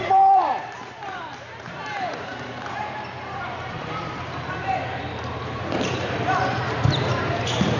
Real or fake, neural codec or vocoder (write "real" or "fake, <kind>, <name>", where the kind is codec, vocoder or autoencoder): fake, vocoder, BigVGAN v2